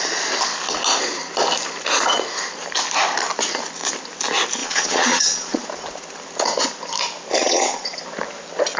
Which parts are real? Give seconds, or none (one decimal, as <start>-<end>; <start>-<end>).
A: 0.0-4.6; 5.6-7.4; 8.0-8.8